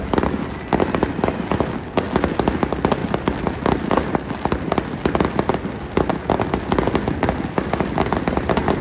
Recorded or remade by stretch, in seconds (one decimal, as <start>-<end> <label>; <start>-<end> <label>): 0.0-8.8 recorded